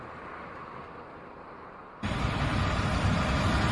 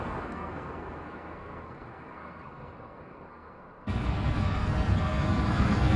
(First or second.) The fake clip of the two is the second